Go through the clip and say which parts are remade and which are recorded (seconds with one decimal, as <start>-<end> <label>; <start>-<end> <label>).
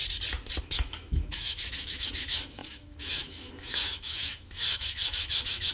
0.0-0.6 recorded; 0.6-5.7 remade